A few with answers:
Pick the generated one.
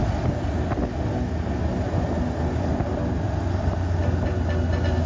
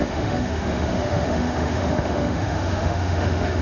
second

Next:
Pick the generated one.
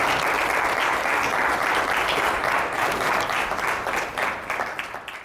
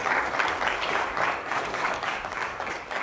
second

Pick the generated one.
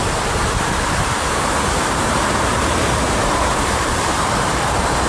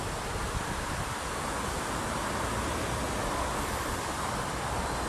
first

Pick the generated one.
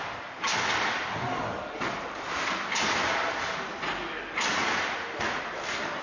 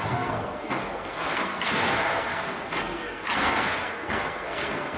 second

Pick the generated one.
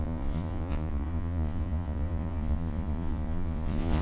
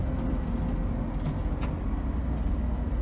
first